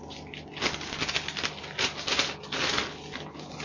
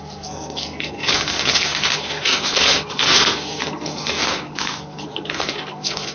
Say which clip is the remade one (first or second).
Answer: second